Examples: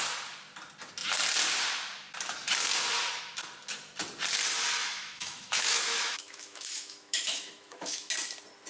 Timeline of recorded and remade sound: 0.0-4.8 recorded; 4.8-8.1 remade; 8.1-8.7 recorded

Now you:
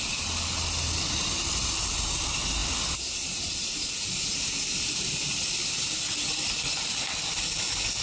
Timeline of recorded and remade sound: 0.0-8.0 recorded

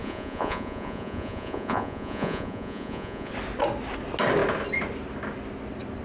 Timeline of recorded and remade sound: 0.0-3.3 remade; 3.3-6.0 recorded